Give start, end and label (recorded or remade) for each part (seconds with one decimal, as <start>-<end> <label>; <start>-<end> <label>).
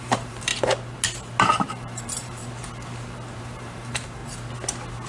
0.0-0.5 remade; 0.5-1.7 recorded; 1.7-2.4 remade; 2.4-3.4 recorded; 3.4-4.2 remade; 4.2-5.1 recorded